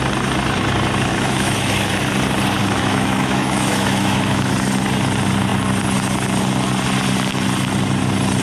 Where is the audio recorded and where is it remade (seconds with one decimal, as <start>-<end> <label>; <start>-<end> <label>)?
0.0-1.1 recorded; 1.1-1.9 remade; 1.9-2.6 recorded; 2.6-4.5 remade; 4.5-8.4 recorded